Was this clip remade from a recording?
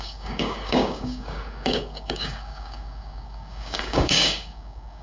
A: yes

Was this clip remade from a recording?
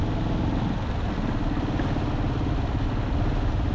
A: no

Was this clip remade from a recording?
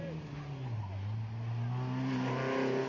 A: no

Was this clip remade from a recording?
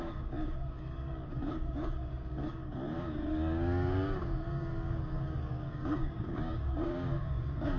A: yes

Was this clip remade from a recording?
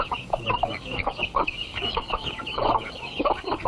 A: yes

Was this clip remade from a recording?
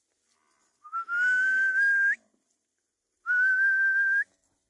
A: no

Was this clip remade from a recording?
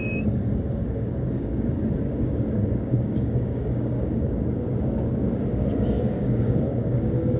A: yes